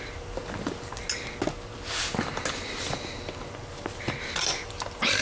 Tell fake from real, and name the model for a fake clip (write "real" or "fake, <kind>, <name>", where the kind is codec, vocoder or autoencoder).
real